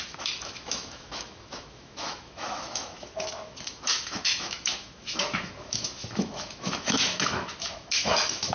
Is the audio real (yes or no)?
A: no